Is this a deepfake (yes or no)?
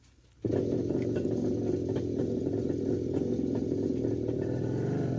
no